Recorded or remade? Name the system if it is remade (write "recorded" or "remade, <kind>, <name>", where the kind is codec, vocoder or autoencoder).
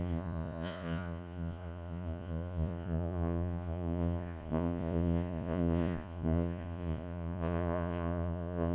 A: remade, vocoder, Vocos